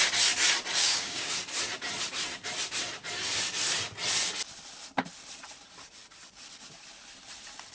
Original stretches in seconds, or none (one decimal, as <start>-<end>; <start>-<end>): 0.0-0.8; 1.3-7.7